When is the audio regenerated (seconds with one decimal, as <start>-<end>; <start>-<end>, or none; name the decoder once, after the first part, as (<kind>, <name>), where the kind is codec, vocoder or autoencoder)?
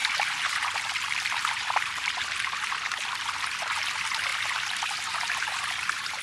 0.0-2.7 (vocoder, BigVGAN v2)